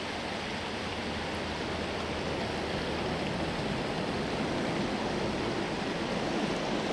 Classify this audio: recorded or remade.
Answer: recorded